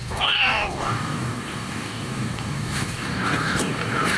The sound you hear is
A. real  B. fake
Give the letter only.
B